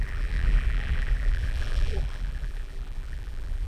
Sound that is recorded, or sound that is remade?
remade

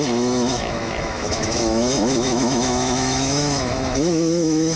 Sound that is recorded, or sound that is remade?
remade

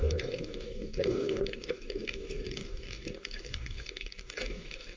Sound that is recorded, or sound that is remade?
remade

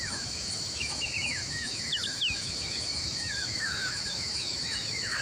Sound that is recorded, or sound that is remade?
remade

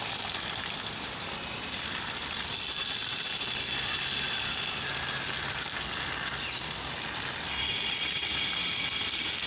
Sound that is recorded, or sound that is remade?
recorded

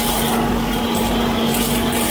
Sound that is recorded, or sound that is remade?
remade